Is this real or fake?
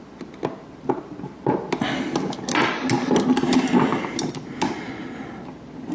real